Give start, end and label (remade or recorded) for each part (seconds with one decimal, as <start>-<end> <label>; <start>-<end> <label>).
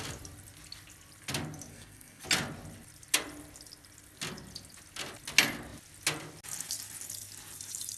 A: 0.0-1.7 recorded; 1.7-2.2 remade; 2.2-8.0 recorded